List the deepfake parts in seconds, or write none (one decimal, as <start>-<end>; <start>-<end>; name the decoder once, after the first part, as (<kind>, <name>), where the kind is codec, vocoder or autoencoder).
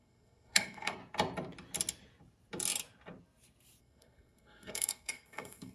0.0-1.0 (codec, SNAC); 3.8-5.7